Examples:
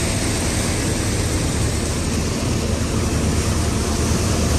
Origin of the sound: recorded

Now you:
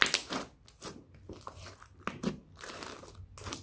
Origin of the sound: recorded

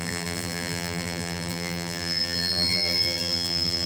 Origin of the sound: remade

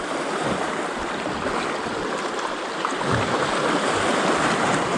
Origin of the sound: recorded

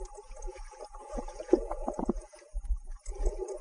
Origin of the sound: remade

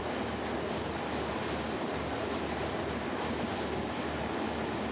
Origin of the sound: recorded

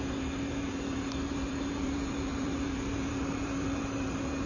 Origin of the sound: remade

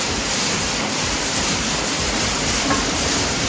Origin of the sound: remade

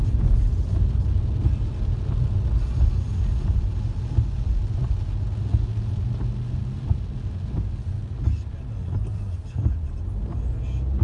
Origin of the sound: recorded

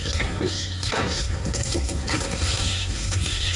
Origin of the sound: remade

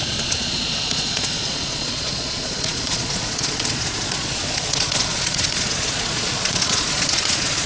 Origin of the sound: remade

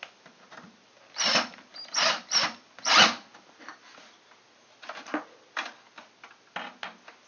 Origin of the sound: recorded